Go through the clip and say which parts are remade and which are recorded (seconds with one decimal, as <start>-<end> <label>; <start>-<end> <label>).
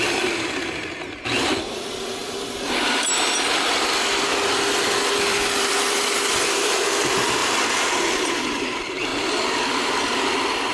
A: 0.0-2.2 remade; 2.2-5.2 recorded; 5.2-7.4 remade; 7.4-8.4 recorded; 8.4-10.7 remade